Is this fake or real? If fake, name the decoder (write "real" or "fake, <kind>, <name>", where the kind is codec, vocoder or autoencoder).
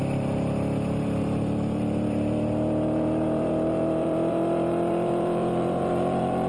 fake, vocoder, BigVGAN v2